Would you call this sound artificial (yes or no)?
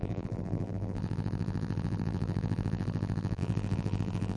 yes